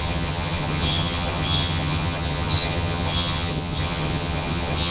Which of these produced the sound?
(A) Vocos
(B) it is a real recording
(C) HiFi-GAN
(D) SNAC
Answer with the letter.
C